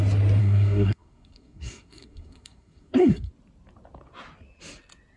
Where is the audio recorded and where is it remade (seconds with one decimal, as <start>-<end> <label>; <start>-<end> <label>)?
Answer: 0.0-0.4 recorded; 0.4-3.3 remade; 3.3-5.2 recorded